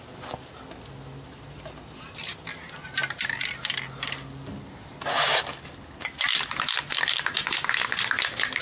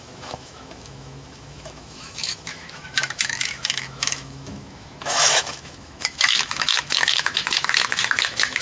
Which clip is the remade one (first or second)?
second